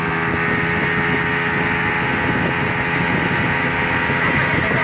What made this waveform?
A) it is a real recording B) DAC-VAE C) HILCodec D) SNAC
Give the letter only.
A